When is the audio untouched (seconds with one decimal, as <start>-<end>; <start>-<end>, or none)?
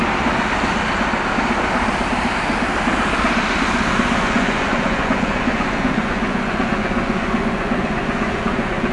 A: 0.0-4.2